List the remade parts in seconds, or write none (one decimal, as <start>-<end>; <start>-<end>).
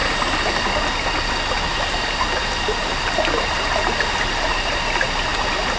none